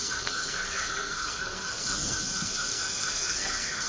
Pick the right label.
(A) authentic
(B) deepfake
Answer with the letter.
B